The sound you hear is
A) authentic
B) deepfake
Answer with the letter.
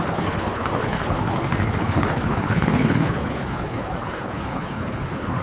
B